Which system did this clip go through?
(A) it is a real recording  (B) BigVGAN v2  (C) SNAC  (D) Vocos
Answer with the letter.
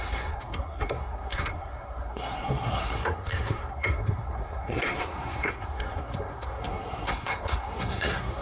C